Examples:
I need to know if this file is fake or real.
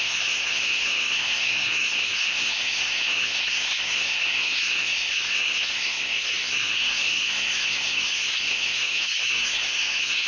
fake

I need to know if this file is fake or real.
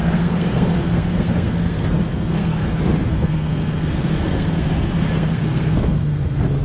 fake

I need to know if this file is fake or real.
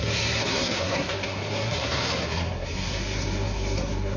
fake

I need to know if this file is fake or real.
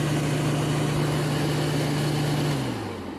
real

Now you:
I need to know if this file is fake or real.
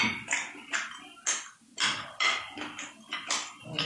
real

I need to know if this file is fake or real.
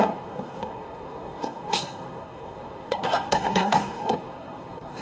fake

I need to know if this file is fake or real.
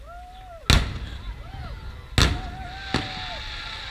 real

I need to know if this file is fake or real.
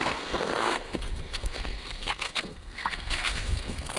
fake